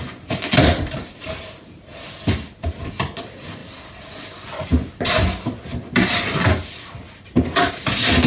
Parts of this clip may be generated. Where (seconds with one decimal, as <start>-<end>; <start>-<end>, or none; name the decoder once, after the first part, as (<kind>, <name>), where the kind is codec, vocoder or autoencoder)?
none